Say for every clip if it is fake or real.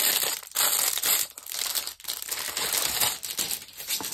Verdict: real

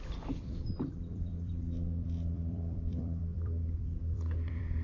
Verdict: fake